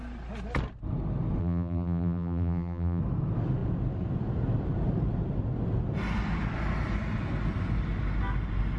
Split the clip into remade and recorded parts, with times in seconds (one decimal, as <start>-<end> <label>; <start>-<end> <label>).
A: 0.0-1.4 recorded; 1.4-3.0 remade; 3.0-8.8 recorded